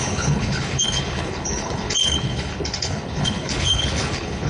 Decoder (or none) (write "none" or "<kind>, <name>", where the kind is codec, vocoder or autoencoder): codec, HILCodec